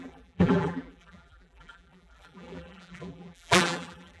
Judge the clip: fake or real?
fake